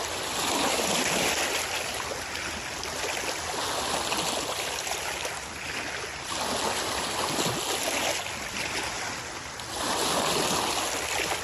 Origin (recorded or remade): recorded